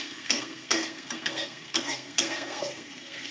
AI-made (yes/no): yes